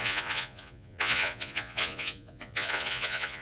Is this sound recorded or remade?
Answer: remade